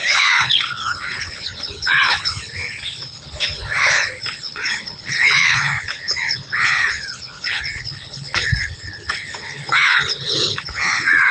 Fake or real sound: fake